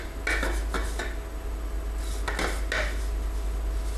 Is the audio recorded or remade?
recorded